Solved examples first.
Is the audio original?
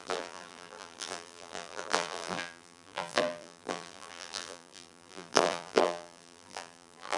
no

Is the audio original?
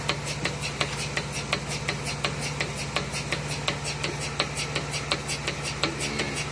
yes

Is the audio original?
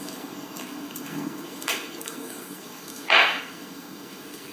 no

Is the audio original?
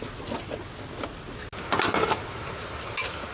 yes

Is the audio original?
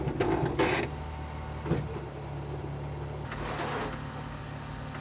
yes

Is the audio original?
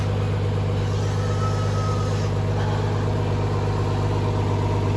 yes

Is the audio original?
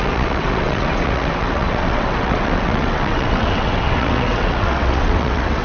no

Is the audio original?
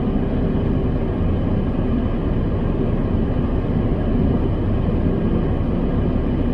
yes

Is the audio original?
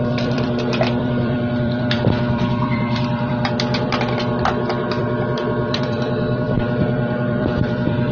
no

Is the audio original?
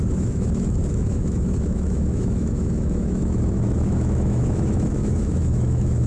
no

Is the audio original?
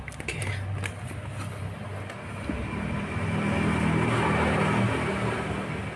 yes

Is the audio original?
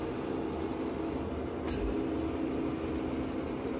yes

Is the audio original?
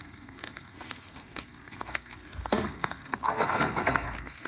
no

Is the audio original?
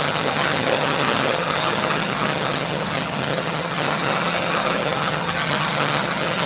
no